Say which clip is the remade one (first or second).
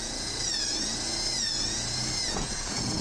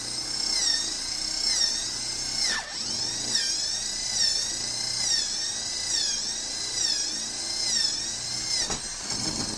first